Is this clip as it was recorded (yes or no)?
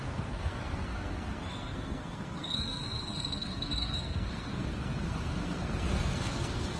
no